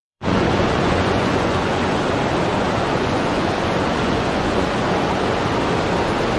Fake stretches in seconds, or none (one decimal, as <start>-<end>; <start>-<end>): 0.0-2.0; 2.5-5.5